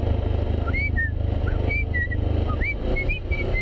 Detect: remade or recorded recorded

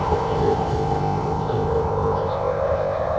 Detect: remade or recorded remade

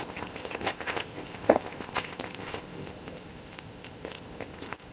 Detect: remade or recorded remade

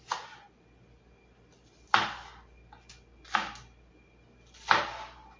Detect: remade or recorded recorded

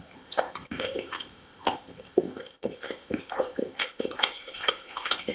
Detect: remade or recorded remade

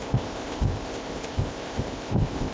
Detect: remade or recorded remade